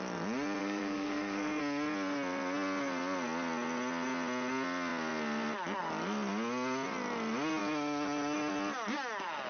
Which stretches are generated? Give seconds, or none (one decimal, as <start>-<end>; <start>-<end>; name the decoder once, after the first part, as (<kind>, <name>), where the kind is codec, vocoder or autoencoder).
0.6-1.6 (codec, SNAC)